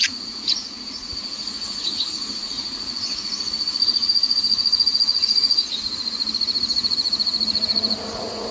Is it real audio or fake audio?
fake